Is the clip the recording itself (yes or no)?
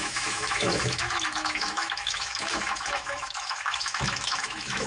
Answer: no